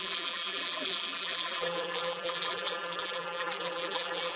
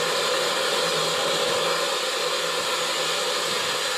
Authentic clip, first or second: second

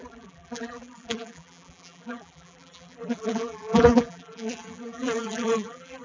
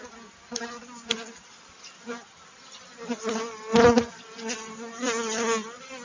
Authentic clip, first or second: second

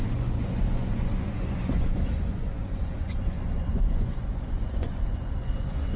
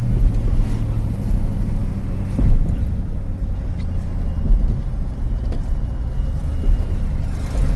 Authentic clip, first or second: second